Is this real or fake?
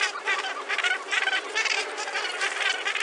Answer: real